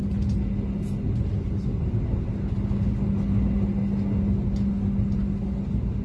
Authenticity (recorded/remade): recorded